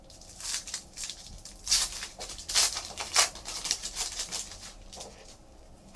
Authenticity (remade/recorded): remade